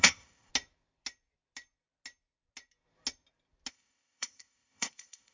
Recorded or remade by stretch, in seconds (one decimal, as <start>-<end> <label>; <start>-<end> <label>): 0.0-0.5 remade; 0.5-3.7 recorded; 3.7-5.3 remade